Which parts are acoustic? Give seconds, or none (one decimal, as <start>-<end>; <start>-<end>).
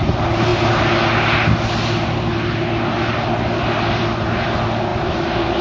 0.0-5.6